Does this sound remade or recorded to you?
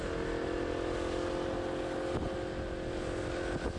recorded